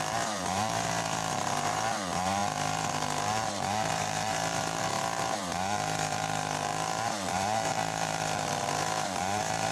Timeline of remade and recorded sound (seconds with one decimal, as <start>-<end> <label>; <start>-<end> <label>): 0.0-9.7 remade